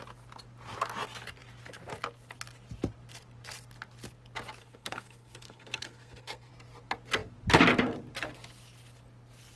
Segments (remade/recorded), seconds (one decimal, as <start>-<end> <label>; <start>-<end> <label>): 0.0-4.6 recorded; 4.6-6.5 remade; 6.5-9.6 recorded